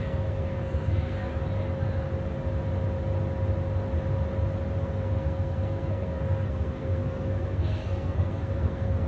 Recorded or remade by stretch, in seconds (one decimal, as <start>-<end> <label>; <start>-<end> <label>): 0.0-1.3 remade; 1.3-4.8 recorded; 4.8-9.1 remade